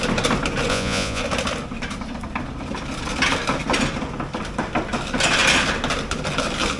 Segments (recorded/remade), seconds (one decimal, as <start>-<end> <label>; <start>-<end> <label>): 0.0-0.7 recorded; 0.7-1.2 remade; 1.2-6.8 recorded